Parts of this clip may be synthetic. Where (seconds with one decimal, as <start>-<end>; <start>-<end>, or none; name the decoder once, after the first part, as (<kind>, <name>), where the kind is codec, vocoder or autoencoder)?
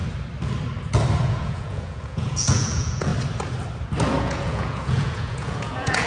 1.2-3.1 (vocoder, Vocos); 4.2-6.1